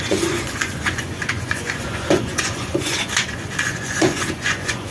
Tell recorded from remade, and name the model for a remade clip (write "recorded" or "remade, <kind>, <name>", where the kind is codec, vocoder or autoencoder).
remade, vocoder, Vocos